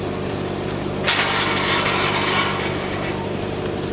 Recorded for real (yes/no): no